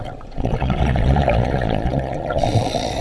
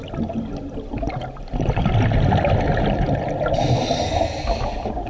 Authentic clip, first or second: second